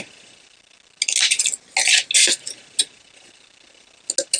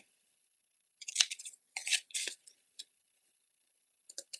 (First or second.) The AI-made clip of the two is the second